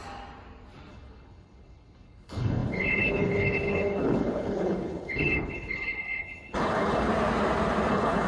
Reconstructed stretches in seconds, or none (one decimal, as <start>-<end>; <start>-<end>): 0.9-7.1; 7.9-8.3